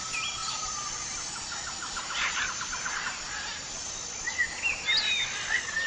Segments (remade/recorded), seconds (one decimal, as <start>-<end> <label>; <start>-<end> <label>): 0.0-0.4 recorded; 0.4-3.9 remade; 3.9-5.9 recorded